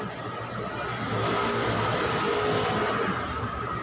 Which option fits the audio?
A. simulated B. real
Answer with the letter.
B